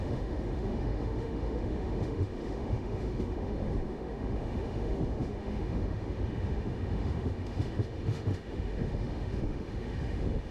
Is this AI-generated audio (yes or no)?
yes